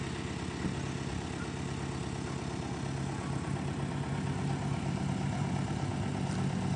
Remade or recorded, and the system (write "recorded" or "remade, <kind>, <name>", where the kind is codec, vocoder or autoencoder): recorded